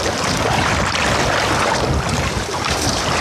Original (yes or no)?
yes